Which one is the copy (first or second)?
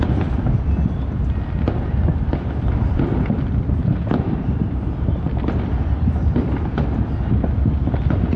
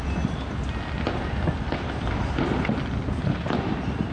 first